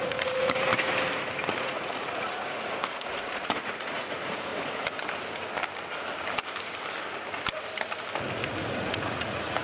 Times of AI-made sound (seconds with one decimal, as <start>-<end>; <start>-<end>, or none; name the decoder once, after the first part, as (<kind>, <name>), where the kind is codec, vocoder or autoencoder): 0.0-0.7 (vocoder, Vocos); 1.5-4.5; 8.7-9.6